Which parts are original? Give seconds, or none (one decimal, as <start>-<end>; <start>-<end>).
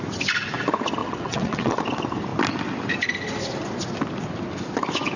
0.0-1.0; 1.8-5.2